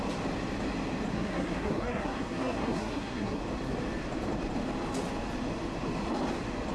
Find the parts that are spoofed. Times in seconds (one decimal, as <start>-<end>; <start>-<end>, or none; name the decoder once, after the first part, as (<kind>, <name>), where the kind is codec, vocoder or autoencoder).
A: 1.1-3.4 (codec, SNAC)